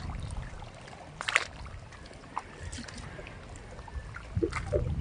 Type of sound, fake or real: fake